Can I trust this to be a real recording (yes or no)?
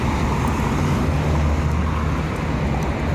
yes